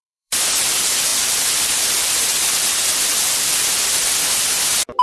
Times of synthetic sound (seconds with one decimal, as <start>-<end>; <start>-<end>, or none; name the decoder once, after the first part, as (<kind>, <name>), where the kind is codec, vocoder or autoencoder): 0.0-4.0 (vocoder, BigVGAN v2)